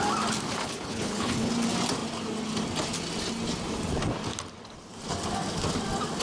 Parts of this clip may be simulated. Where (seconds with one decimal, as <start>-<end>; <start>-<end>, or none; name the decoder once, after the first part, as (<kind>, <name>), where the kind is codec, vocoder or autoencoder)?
0.6-1.5 (codec, HILCodec)